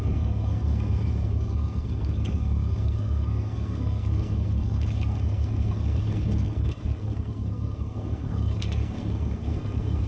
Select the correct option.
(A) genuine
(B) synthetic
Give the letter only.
B